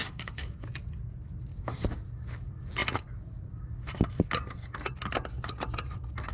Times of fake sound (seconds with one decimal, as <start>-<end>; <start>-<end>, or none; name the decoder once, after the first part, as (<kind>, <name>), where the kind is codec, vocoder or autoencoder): 0.0-0.7 (codec, DAC); 1.5-2.0